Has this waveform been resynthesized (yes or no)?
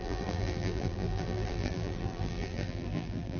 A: yes